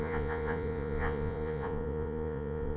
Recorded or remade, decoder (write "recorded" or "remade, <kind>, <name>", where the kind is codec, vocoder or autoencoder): remade, vocoder, Vocos